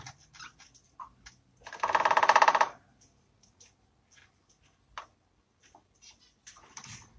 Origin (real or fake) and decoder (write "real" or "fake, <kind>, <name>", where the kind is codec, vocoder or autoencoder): real